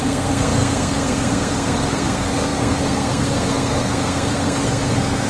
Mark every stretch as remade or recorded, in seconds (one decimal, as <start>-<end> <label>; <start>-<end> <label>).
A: 0.0-5.3 remade